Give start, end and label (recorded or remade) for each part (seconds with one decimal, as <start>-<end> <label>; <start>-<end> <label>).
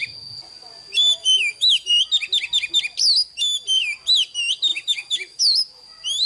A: 0.0-1.2 recorded; 1.2-1.9 remade; 1.9-4.7 recorded; 4.7-5.4 remade; 5.4-6.3 recorded